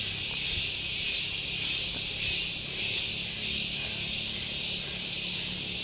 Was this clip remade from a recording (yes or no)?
no